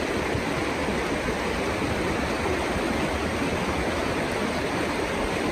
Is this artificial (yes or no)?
no